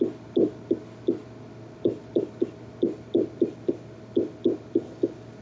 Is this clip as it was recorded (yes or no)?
yes